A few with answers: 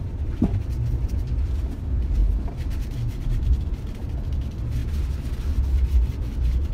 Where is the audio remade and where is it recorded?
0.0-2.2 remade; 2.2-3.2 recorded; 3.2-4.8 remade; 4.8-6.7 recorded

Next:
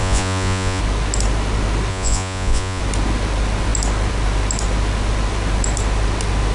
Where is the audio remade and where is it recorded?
0.0-0.8 remade; 0.8-1.9 recorded; 1.9-2.8 remade; 2.8-6.5 recorded

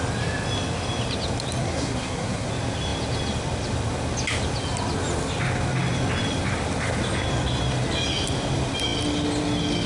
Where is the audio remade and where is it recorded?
0.0-1.6 recorded; 1.6-2.5 remade; 2.5-9.9 recorded

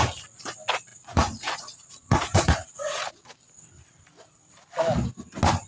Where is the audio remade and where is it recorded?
0.0-0.9 recorded; 0.9-3.1 remade; 3.1-5.7 recorded

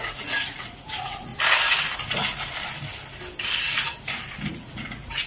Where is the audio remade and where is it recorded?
0.0-1.3 remade; 1.3-4.5 recorded; 4.5-5.3 remade